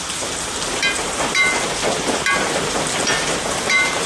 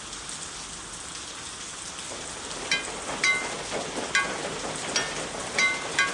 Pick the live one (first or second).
second